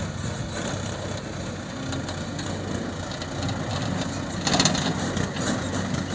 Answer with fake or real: real